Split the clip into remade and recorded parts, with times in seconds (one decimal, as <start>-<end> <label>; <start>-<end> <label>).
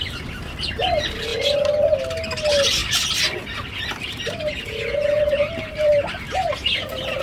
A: 0.0-2.8 recorded; 2.8-7.2 remade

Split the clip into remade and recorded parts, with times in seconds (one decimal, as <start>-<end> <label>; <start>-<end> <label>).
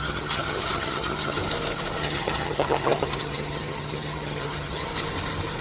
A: 0.0-1.4 remade; 1.4-2.0 recorded; 2.0-4.9 remade; 4.9-5.6 recorded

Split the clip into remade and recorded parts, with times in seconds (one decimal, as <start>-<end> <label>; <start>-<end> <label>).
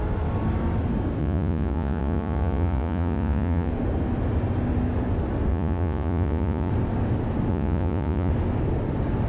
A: 0.0-1.2 recorded; 1.2-3.7 remade; 3.7-5.5 recorded; 5.5-6.7 remade; 6.7-7.5 recorded; 7.5-8.3 remade; 8.3-9.3 recorded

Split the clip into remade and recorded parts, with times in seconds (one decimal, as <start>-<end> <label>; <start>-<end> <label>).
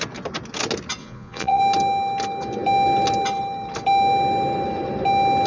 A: 0.0-1.0 recorded; 1.0-1.6 remade; 1.6-5.5 recorded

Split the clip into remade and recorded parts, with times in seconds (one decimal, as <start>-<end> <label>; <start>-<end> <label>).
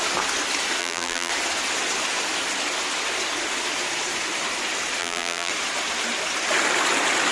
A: 0.0-0.8 recorded; 0.8-1.3 remade; 1.3-5.0 recorded; 5.0-5.5 remade; 5.5-7.3 recorded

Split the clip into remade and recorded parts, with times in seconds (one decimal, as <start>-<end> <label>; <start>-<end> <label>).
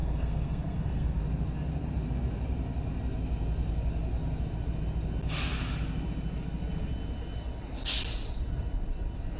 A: 0.0-1.2 remade; 1.2-9.4 recorded